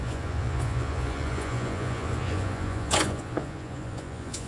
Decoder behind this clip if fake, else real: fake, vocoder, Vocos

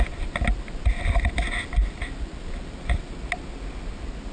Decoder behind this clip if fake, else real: real